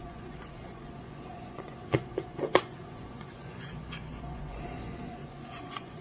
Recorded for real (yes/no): no